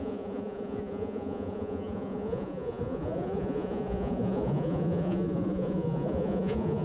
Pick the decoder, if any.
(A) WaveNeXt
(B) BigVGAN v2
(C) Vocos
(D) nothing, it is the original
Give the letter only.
C